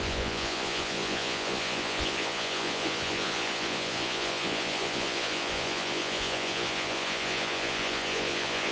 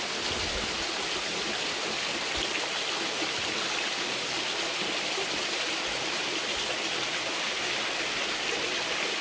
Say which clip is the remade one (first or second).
first